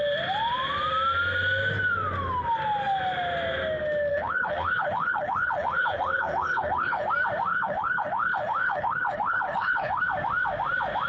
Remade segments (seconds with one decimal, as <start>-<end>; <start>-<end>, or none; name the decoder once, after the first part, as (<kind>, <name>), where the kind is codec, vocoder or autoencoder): 4.1-7.1 (codec, HILCodec); 7.5-10.0